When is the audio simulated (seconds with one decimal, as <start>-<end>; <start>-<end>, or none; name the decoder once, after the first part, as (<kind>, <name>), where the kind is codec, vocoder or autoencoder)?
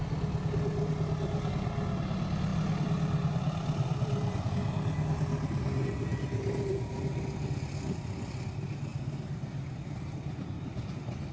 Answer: 2.5-4.5 (vocoder, BigVGAN v2); 6.1-7.1; 8.9-10.6